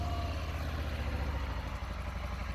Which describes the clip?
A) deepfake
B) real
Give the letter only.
B